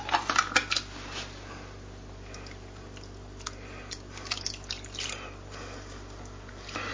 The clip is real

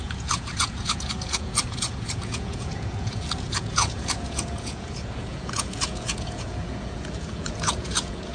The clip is fake